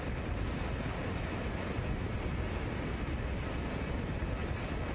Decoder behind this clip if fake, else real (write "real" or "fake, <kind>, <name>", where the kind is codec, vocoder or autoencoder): real